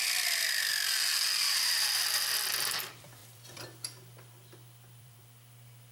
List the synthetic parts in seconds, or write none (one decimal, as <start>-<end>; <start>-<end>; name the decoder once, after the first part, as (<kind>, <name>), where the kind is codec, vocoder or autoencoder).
0.0-0.7 (vocoder, BigVGAN v2); 1.4-5.9